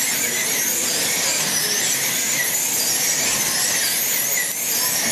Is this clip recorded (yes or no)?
yes